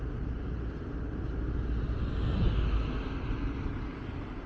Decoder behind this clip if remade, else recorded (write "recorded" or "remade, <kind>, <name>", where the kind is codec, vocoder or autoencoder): recorded